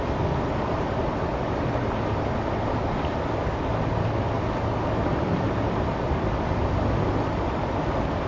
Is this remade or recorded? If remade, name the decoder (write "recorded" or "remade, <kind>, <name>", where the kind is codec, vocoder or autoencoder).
recorded